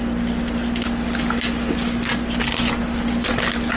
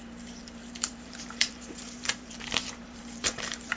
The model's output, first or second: second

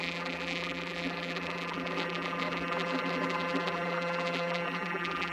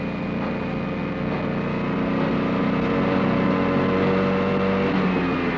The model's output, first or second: first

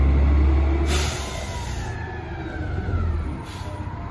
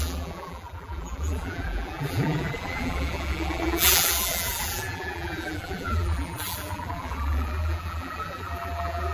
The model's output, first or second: second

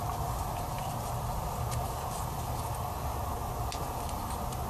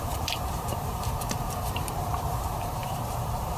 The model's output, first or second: second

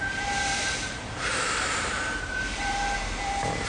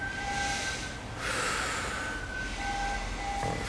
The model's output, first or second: first